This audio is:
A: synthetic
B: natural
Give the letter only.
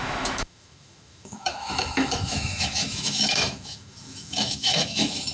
A